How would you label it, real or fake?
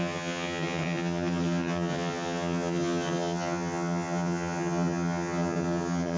fake